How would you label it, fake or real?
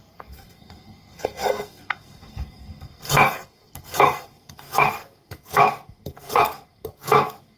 fake